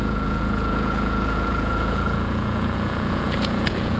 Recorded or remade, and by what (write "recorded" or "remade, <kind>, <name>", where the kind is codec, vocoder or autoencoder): remade, vocoder, Vocos